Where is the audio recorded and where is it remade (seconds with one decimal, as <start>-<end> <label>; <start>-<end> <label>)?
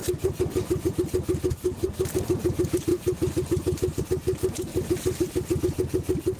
0.0-0.9 remade; 0.9-6.4 recorded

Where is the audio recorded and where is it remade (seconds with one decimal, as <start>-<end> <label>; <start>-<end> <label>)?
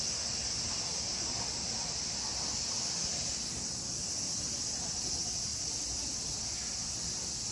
0.0-7.5 recorded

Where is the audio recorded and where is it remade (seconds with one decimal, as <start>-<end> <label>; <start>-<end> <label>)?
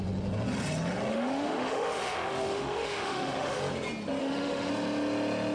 0.0-1.1 recorded; 1.1-3.6 remade; 3.6-4.2 recorded; 4.2-4.7 remade; 4.7-5.5 recorded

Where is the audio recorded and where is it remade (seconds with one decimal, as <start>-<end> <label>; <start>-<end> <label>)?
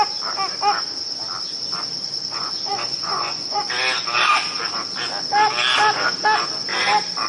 0.0-2.0 recorded; 2.0-3.7 remade; 3.7-7.3 recorded